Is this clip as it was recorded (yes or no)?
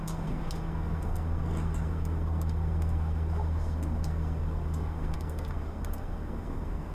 no